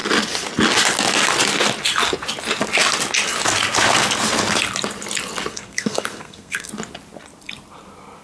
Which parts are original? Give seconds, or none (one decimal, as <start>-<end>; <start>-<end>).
0.0-5.5; 6.7-8.2